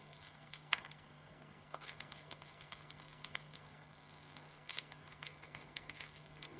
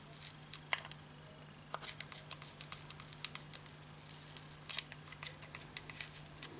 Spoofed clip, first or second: first